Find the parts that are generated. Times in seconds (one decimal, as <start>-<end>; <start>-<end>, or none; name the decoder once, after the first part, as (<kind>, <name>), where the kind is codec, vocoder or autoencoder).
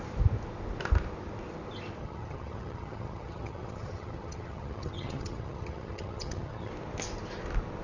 2.0-6.7 (vocoder, HiFi-GAN)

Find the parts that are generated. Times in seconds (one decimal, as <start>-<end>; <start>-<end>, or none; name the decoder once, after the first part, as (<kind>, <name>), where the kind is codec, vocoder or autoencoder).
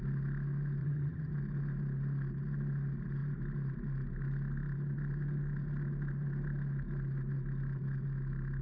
0.8-1.3 (vocoder, HiFi-GAN)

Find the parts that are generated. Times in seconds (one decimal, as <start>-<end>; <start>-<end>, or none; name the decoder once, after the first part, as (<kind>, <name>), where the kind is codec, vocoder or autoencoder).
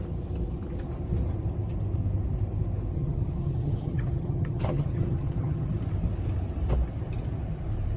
2.9-5.7 (vocoder, HiFi-GAN)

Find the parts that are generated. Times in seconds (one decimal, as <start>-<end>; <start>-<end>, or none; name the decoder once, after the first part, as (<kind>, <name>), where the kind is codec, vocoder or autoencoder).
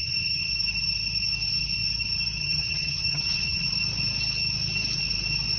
0.0-0.5 (vocoder, HiFi-GAN); 2.4-3.6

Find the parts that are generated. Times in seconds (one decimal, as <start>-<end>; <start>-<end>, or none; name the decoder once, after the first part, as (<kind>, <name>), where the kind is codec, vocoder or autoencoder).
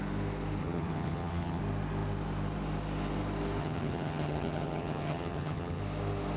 0.6-1.6 (vocoder, HiFi-GAN); 3.6-5.8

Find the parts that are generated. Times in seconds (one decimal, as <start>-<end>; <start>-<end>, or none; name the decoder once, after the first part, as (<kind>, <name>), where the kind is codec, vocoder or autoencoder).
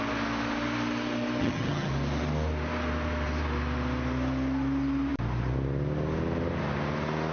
1.4-1.9 (vocoder, HiFi-GAN)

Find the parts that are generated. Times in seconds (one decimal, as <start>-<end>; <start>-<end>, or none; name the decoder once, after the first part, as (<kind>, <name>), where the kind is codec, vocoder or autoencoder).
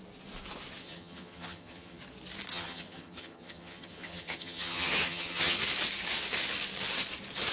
0.8-2.0 (vocoder, HiFi-GAN); 2.5-5.6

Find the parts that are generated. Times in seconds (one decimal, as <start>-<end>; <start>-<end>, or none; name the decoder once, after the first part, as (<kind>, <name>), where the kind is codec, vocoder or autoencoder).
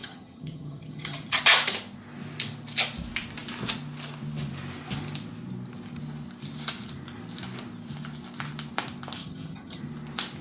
0.0-1.4 (vocoder, HiFi-GAN); 9.2-9.8